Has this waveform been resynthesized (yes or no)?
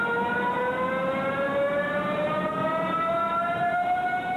no